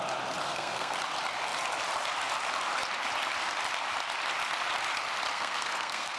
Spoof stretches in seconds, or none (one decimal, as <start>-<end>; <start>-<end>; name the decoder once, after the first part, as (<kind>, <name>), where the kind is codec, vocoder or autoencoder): 0.5-1.0 (codec, SNAC); 5.3-6.2